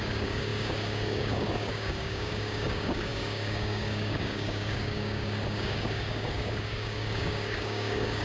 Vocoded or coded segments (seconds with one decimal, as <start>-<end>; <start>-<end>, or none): 0.0-8.2